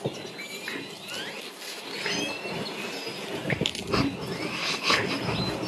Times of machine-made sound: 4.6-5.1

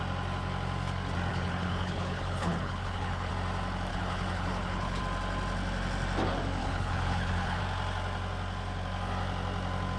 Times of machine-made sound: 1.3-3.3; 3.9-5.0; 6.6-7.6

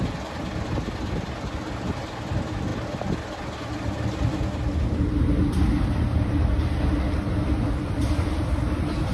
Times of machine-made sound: none